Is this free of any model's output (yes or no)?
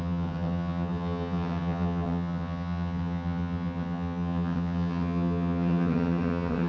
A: no